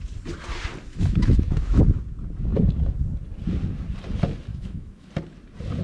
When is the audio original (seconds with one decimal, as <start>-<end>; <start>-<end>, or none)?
0.0-0.9; 1.8-4.5; 5.1-5.8